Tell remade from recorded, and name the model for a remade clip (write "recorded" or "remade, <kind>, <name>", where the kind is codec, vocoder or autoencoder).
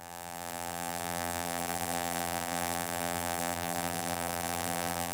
remade, vocoder, BigVGAN v2